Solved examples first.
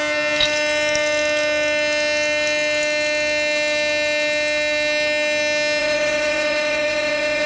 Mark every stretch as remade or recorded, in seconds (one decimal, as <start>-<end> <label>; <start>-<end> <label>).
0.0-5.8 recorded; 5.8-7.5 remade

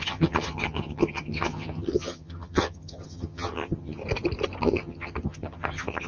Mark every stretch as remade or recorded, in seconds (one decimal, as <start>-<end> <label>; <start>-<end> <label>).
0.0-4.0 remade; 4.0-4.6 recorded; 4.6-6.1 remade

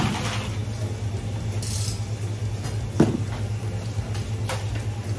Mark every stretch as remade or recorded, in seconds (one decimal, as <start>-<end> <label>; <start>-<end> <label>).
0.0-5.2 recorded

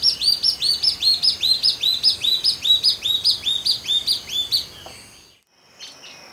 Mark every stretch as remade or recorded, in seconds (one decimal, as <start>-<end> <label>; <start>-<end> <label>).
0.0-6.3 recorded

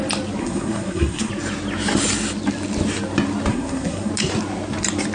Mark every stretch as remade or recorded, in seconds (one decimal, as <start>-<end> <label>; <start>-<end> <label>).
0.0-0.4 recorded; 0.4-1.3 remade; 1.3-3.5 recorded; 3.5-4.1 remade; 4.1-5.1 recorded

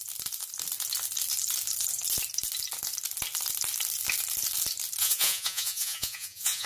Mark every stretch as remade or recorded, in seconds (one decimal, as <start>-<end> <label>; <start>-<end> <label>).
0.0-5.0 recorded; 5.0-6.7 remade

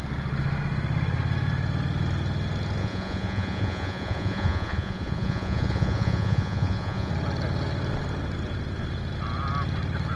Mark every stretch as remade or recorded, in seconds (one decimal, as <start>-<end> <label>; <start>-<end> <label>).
0.0-2.8 recorded; 2.8-7.1 remade; 7.1-10.2 recorded